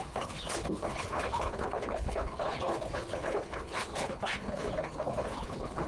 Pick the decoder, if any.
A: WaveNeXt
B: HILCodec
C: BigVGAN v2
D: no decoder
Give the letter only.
B